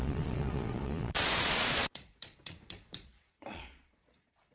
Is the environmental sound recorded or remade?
remade